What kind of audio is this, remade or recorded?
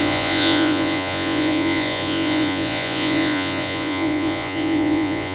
remade